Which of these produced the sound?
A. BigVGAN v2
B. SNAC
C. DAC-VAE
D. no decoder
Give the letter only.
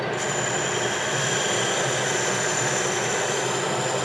D